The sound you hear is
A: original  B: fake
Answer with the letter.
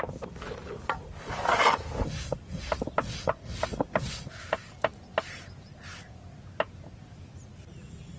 A